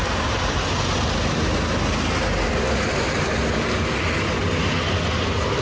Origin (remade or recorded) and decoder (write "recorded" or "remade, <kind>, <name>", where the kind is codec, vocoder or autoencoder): recorded